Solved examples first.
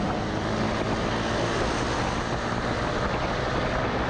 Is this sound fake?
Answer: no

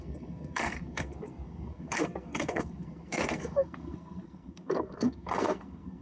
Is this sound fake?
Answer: yes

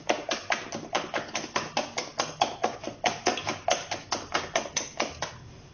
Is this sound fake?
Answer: no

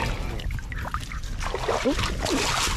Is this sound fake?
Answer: no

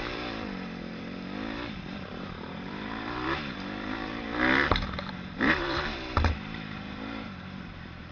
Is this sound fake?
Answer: yes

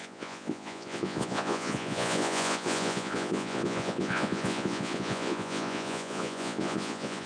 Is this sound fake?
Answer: yes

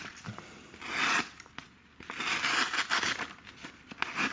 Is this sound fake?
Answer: no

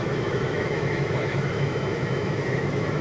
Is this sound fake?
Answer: yes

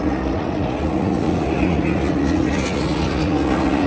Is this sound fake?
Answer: yes